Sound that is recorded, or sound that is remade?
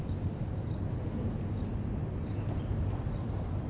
recorded